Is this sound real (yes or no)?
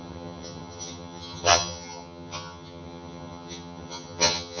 no